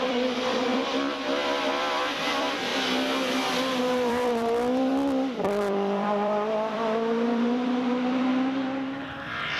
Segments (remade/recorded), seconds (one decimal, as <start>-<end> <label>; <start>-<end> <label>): 0.0-0.8 remade; 0.8-1.7 recorded; 1.7-2.7 remade; 2.7-3.8 recorded; 3.8-4.9 remade; 4.9-5.4 recorded; 5.4-8.3 remade; 8.3-9.6 recorded